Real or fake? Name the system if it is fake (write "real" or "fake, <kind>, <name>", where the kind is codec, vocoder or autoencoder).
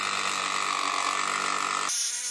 real